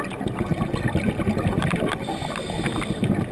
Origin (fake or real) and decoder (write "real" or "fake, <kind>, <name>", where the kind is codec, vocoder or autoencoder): real